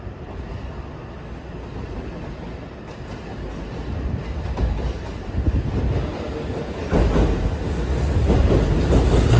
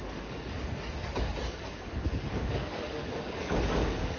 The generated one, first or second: second